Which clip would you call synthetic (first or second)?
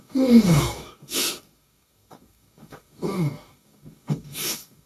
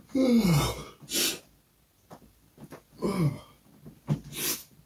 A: first